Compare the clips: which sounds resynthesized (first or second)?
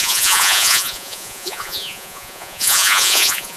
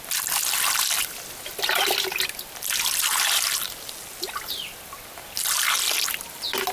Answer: first